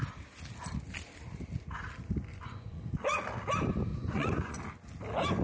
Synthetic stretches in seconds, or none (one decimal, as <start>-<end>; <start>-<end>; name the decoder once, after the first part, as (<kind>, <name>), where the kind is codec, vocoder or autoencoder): 2.3-2.8 (vocoder, Vocos); 3.9-4.6